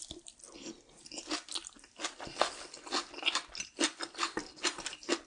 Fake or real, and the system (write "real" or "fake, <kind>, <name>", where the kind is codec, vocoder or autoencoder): real